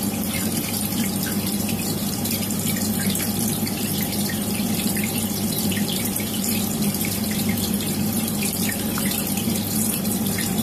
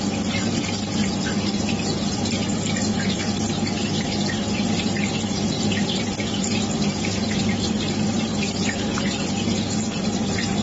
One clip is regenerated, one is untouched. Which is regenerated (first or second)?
first